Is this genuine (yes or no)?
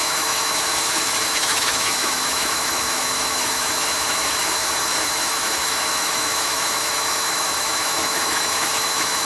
no